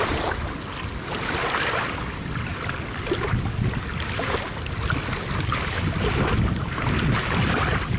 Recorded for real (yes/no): yes